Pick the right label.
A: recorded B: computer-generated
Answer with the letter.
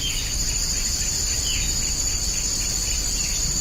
A